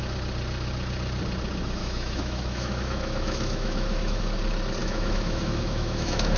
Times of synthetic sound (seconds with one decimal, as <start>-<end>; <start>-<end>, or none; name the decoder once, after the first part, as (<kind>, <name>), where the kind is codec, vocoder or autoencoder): 1.8-4.2 (autoencoder, DAC-VAE); 4.8-6.4